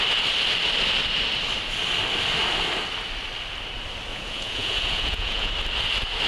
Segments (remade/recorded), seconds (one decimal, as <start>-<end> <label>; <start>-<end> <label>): 0.0-4.1 recorded; 4.1-5.5 remade; 5.5-6.3 recorded